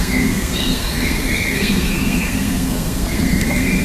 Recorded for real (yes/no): no